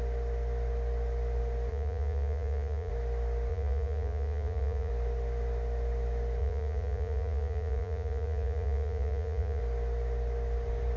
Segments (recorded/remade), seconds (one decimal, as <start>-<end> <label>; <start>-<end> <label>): 0.0-1.7 recorded; 1.7-2.9 remade; 2.9-3.5 recorded; 3.5-4.9 remade; 4.9-6.4 recorded; 6.4-9.6 remade; 9.6-11.0 recorded